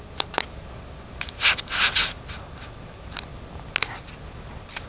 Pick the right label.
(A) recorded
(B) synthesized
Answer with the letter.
A